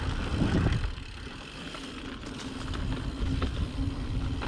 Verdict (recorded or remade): recorded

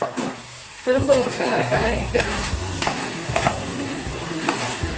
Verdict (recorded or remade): remade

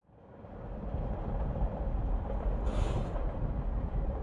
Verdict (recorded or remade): remade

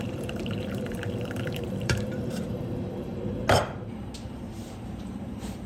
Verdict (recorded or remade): remade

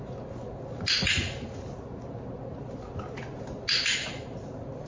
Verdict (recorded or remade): recorded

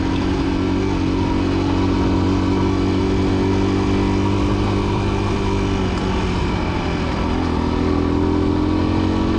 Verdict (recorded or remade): recorded